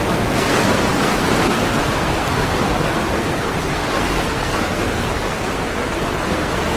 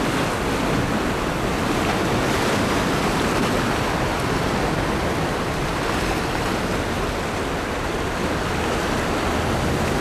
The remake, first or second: first